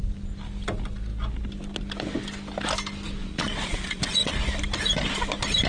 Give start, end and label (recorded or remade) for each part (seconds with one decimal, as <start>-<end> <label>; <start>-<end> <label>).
0.0-3.2 recorded; 3.2-4.4 remade; 4.4-5.7 recorded